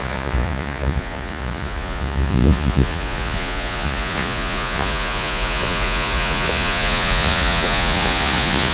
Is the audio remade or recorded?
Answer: remade